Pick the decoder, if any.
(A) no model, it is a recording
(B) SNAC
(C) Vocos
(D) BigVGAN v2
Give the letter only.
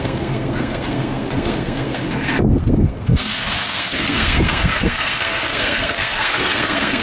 B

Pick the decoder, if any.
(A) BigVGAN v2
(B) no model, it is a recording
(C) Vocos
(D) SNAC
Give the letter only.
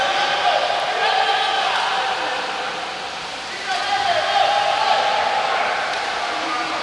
B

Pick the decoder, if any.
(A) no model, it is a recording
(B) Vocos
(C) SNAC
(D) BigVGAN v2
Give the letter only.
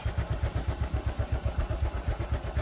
A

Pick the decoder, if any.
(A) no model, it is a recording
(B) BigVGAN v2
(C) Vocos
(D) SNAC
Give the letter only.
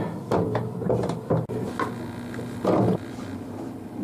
A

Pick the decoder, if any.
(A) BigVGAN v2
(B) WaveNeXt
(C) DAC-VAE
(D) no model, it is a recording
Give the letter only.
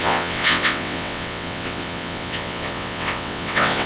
B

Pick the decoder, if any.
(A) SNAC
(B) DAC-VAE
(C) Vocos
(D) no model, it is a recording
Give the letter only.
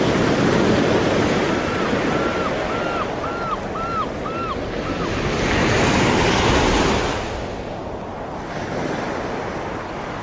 D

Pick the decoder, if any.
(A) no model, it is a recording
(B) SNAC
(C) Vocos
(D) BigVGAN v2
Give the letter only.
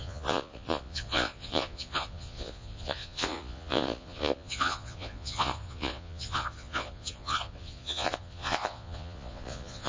C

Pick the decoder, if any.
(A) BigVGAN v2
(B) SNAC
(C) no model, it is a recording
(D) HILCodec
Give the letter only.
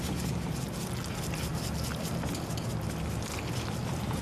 C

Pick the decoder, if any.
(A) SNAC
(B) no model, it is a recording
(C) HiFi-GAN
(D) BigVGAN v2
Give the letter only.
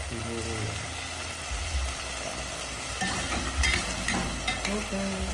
B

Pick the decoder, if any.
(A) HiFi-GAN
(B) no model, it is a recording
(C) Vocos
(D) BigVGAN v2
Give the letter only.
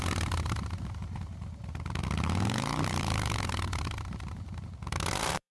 D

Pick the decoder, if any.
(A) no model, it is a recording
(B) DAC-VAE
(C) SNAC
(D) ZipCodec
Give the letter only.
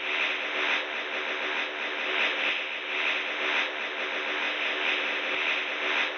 A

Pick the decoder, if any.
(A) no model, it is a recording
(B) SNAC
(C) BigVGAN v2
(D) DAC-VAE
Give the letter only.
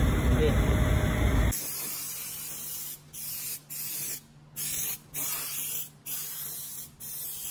A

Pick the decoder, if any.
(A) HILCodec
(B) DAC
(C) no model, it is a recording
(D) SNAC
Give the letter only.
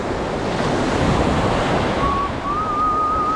C